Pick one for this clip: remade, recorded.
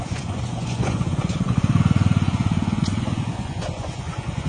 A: remade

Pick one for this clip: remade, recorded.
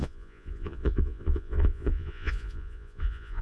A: remade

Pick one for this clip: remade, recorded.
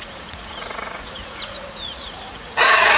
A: remade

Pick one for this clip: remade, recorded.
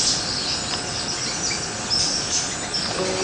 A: recorded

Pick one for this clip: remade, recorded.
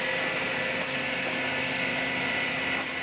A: recorded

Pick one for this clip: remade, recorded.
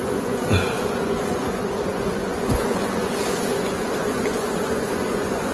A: remade